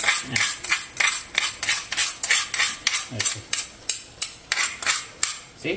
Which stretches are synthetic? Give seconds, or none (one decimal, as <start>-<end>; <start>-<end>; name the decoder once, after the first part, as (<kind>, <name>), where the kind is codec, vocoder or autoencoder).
0.0-2.0 (vocoder, BigVGAN v2); 3.4-5.8